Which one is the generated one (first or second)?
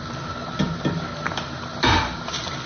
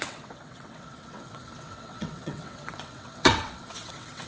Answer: second